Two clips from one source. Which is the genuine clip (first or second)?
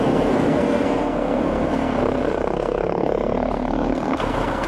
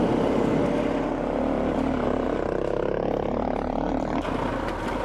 second